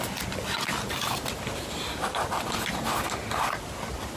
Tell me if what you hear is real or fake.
real